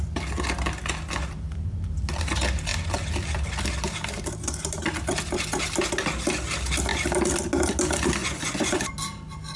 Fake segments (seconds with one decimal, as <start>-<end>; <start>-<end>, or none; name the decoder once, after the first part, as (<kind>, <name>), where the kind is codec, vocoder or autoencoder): 8.2-8.9 (vocoder, Vocos)